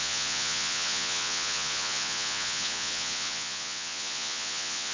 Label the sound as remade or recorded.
remade